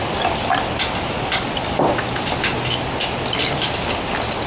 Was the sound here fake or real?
real